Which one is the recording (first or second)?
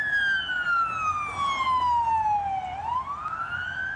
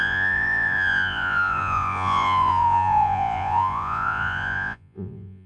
first